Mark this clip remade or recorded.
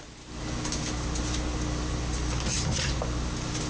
recorded